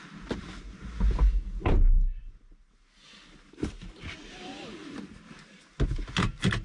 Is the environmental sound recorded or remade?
recorded